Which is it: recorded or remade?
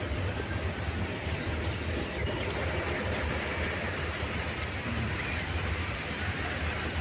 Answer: recorded